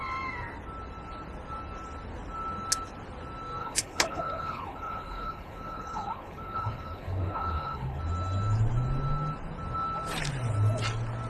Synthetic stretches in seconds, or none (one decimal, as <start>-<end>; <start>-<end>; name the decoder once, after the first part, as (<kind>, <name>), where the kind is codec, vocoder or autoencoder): 3.6-8.0 (codec, HILCodec)